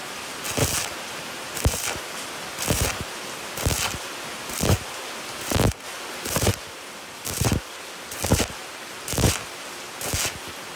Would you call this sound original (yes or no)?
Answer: yes